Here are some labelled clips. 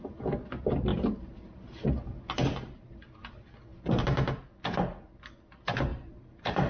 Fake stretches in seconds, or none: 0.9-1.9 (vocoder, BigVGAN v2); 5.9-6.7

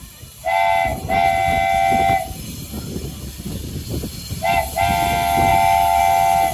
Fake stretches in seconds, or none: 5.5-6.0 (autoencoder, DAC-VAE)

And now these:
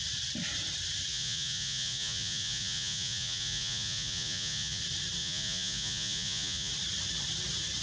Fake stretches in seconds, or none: 1.1-4.8 (vocoder, Vocos); 5.2-6.7

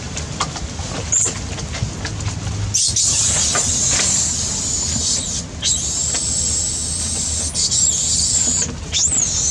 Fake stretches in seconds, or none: none

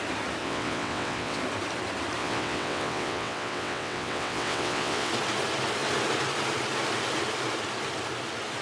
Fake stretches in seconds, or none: 0.4-1.4 (vocoder, WaveNeXt); 2.2-5.1